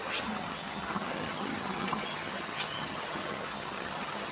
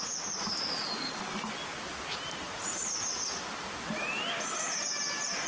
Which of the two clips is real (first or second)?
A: second